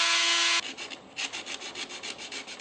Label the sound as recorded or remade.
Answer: recorded